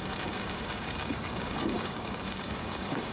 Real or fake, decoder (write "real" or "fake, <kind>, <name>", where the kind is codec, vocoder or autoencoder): fake, codec, DAC